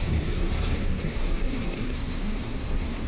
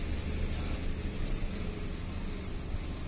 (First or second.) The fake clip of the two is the first